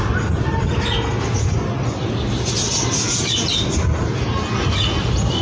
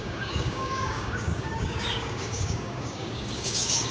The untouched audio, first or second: first